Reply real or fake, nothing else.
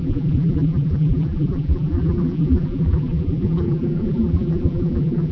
fake